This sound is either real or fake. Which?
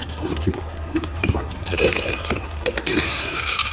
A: fake